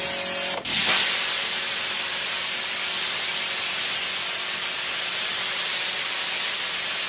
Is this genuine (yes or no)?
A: yes